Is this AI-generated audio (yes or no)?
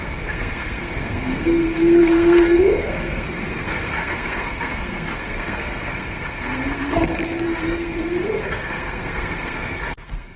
yes